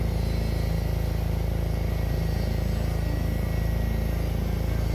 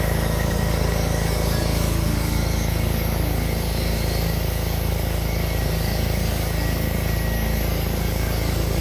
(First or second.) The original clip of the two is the first